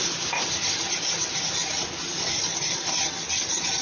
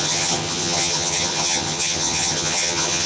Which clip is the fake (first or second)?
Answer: second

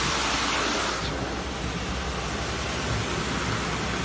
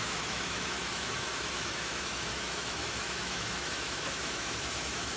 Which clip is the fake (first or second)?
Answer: second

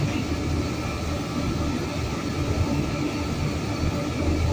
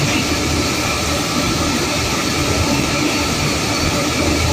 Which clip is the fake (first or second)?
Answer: second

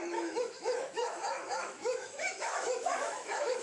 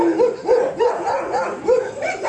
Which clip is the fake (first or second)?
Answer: first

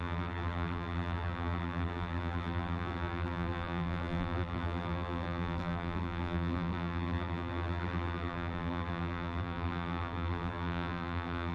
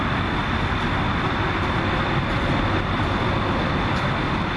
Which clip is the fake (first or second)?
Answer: first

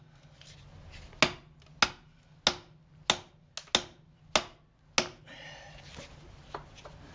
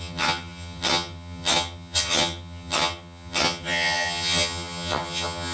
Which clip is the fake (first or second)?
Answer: second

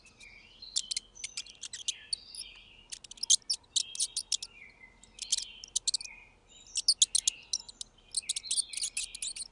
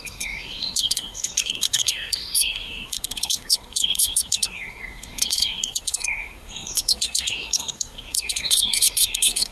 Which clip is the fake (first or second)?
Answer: second